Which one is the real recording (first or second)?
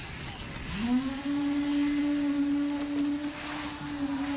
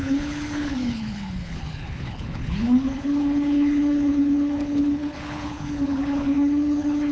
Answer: first